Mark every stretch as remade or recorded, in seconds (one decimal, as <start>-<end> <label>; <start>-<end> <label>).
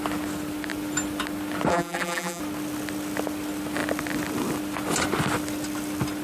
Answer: 0.0-1.7 recorded; 1.7-2.4 remade; 2.4-6.2 recorded